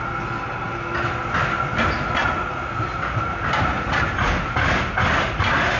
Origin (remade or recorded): recorded